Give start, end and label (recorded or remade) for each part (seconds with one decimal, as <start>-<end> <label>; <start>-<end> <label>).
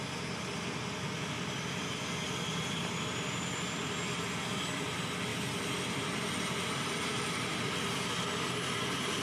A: 0.0-9.2 recorded